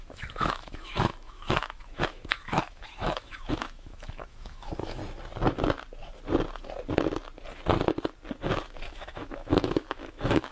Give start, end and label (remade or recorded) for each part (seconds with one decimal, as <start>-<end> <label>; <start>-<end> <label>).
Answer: 0.0-5.0 remade; 5.0-8.9 recorded; 8.9-10.5 remade